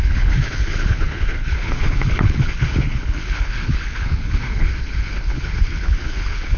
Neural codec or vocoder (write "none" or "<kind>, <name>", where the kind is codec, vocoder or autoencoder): codec, HILCodec